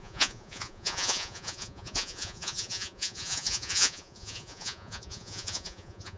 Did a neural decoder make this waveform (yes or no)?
yes